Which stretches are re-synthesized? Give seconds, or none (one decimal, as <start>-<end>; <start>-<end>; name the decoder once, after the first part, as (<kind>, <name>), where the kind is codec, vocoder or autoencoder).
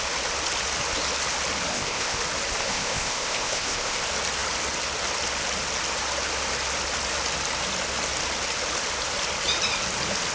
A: 1.7-2.2 (codec, ZipCodec); 2.6-4.0